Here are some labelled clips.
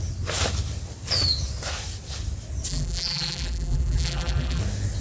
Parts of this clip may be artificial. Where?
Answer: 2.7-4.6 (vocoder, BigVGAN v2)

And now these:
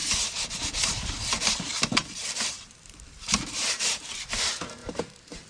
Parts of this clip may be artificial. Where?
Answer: 1.5-5.5 (vocoder, BigVGAN v2)

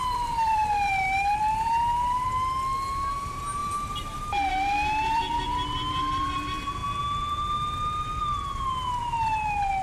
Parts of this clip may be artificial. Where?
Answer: 0.0-2.3 (vocoder, BigVGAN v2); 3.1-6.8; 8.2-9.8